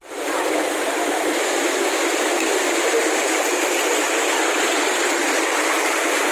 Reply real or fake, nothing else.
real